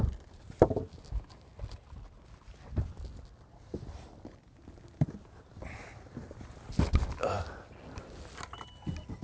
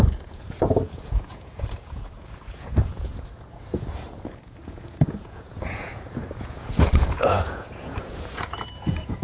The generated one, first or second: second